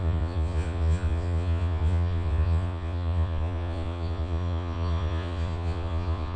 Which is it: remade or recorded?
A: remade